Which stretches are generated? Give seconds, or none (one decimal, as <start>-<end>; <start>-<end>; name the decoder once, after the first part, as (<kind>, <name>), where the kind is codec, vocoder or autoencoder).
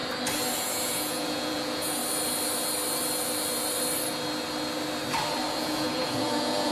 0.6-2.0 (vocoder, Vocos); 5.6-6.7